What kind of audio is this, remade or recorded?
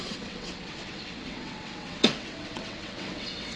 remade